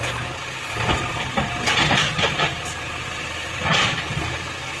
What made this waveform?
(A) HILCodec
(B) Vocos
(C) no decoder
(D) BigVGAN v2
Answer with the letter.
C